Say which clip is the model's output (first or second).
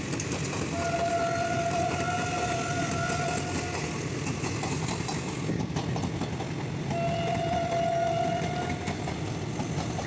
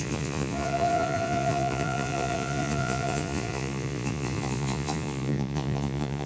second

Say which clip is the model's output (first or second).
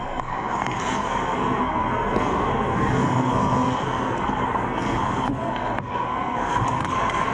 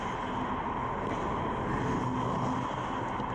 first